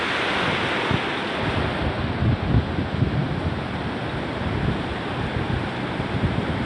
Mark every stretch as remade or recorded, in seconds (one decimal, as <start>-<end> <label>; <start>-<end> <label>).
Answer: 0.0-6.7 recorded